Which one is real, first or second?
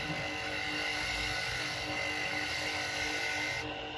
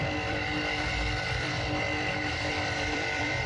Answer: first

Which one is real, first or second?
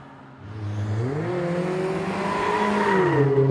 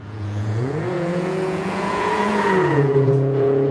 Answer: first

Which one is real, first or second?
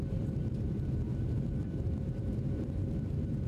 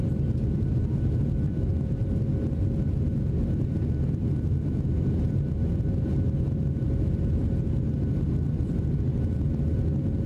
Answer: second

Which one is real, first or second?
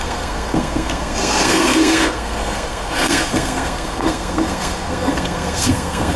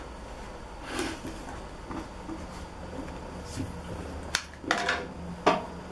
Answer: second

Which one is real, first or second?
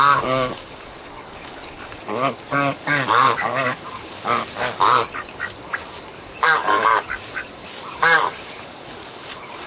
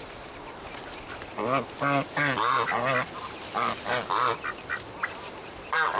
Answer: second